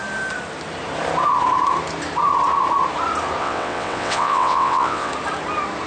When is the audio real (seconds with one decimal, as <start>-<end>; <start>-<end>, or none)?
0.0-3.4; 5.1-5.9